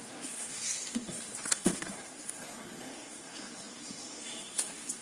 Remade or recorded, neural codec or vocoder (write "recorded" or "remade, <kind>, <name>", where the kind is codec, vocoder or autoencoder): remade, codec, SNAC